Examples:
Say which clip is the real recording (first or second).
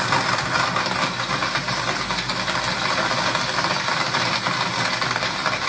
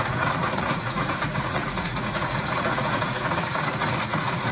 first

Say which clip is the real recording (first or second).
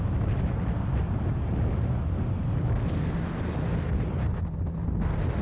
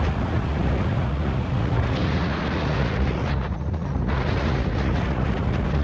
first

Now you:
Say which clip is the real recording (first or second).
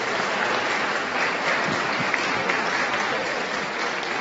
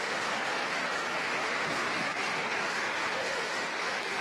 first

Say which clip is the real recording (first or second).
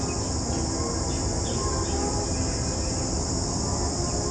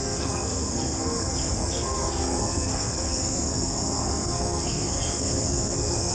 first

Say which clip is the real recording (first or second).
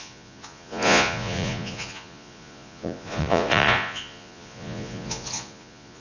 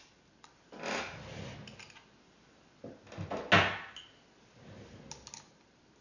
second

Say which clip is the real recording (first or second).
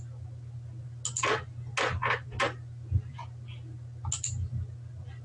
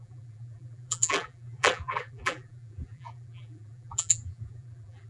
first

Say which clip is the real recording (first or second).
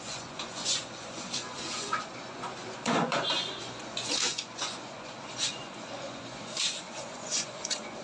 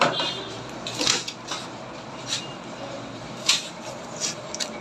second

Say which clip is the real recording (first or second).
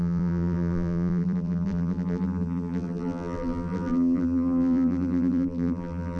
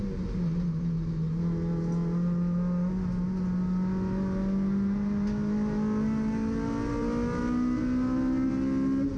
second